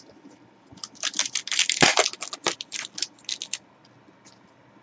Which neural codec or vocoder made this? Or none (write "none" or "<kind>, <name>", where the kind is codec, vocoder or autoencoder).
none